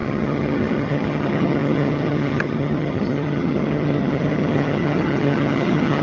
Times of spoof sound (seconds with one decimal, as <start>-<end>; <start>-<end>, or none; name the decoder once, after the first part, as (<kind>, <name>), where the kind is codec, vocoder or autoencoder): 0.0-6.0 (vocoder, HiFi-GAN)